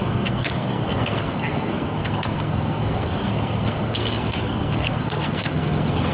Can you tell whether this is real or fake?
fake